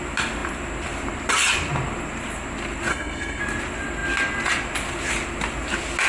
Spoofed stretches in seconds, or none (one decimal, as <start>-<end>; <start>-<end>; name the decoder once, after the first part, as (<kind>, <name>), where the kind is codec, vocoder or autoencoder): 2.9-3.4 (codec, SNAC)